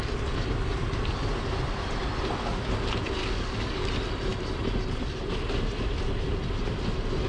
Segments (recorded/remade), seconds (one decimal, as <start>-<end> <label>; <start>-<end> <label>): 0.0-3.2 recorded; 3.2-3.9 remade; 3.9-7.3 recorded